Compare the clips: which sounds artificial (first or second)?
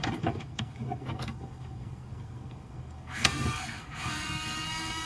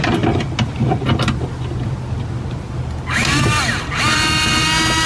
first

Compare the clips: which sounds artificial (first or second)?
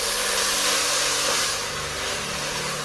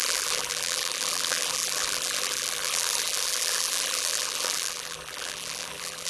second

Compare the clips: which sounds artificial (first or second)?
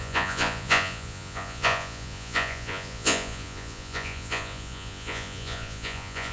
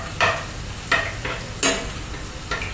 first